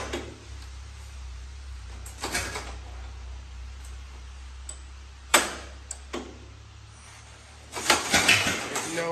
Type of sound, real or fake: real